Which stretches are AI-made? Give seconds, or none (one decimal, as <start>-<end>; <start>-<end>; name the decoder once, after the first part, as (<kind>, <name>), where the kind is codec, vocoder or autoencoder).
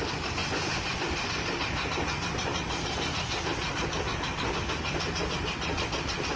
0.4-1.2 (vocoder, Vocos)